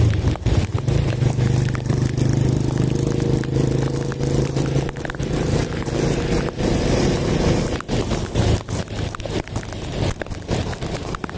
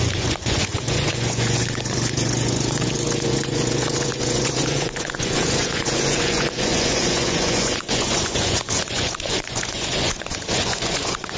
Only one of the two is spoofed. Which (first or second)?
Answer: second